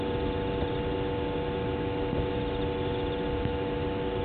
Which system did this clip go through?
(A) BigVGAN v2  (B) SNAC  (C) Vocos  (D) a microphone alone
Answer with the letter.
D